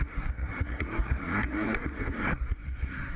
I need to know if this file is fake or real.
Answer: fake